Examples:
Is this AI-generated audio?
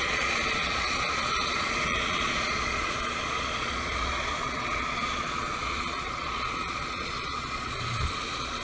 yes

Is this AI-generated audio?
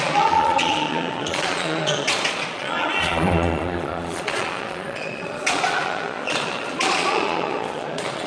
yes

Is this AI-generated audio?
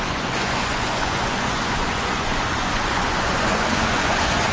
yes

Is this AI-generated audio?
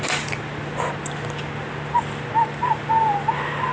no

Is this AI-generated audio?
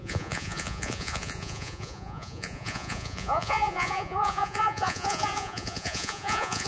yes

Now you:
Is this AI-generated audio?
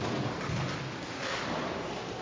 no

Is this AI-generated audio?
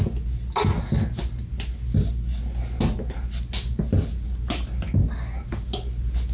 no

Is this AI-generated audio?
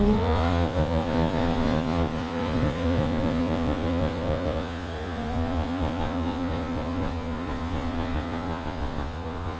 yes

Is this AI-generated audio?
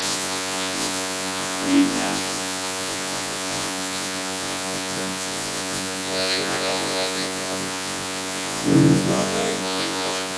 yes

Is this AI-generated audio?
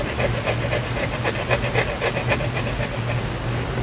no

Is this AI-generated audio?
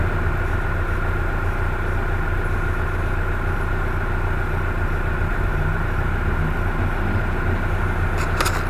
no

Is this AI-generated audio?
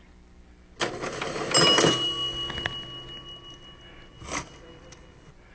no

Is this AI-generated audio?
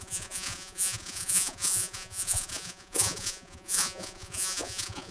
yes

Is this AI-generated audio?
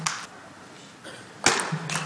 no